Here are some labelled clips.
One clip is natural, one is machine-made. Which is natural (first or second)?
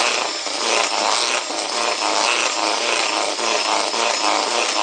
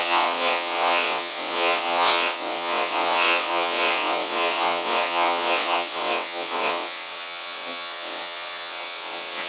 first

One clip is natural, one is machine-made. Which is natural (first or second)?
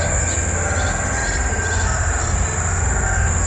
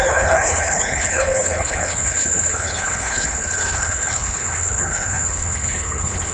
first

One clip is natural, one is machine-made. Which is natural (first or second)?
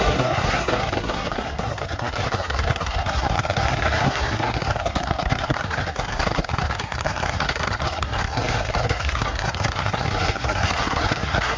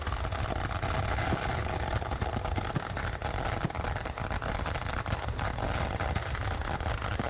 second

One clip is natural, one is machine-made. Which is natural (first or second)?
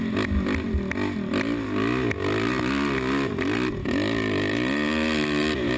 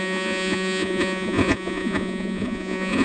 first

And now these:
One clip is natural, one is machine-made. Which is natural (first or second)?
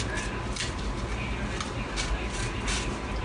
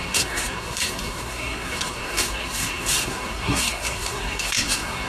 first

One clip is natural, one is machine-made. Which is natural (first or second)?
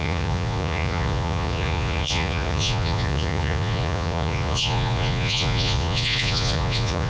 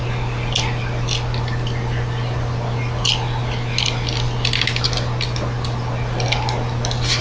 second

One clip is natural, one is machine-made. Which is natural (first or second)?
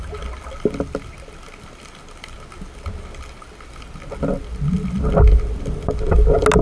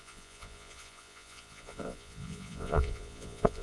first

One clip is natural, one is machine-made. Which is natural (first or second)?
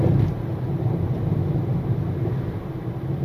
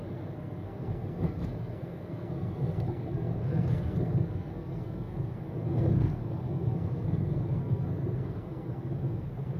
first